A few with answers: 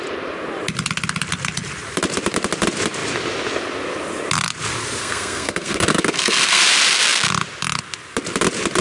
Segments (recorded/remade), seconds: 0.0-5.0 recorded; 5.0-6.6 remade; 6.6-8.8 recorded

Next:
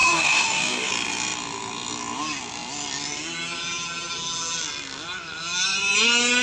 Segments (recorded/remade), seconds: 0.0-0.9 remade; 0.9-6.4 recorded